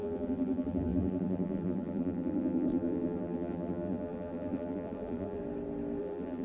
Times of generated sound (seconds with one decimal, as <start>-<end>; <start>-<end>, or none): 0.0-5.4; 6.0-6.4